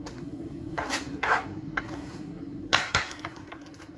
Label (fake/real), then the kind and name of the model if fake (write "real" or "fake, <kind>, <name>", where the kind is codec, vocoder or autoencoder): fake, codec, SNAC